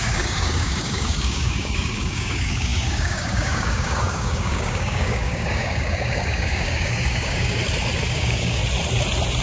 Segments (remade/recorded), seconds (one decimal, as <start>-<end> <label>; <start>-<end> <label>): 0.0-7.6 remade; 7.6-8.1 recorded; 8.1-8.6 remade; 8.6-9.4 recorded